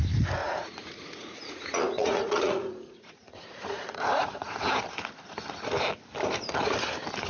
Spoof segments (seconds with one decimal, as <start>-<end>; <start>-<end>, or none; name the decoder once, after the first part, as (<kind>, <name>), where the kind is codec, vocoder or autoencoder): 0.4-4.8 (vocoder, Vocos)